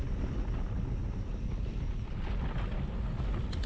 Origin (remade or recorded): recorded